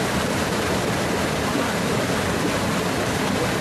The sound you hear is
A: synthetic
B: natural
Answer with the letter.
B